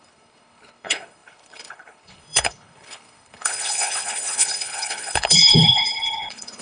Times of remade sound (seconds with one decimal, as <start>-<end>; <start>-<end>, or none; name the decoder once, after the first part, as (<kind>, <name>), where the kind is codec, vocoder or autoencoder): 0.0-6.6 (codec, HILCodec)